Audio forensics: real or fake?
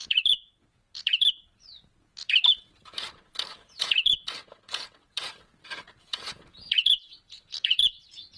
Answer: fake